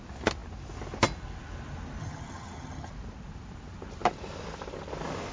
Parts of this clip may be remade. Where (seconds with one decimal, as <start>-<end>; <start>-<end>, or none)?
2.0-2.9